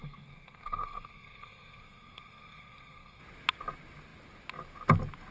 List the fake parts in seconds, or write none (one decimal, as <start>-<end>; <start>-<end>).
0.0-3.2